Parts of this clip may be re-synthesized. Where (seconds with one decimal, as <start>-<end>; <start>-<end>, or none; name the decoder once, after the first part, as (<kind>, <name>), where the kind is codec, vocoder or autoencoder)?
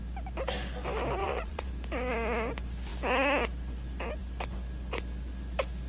1.2-1.7 (vocoder, Vocos)